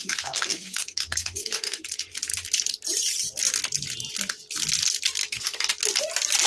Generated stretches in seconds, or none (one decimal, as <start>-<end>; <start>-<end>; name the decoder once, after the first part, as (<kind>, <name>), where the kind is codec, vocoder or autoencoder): 0.0-1.8 (codec, SNAC); 5.2-5.7